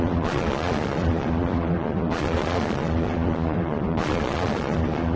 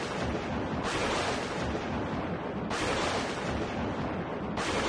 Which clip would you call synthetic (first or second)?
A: first